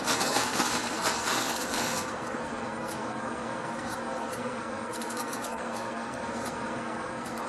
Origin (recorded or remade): remade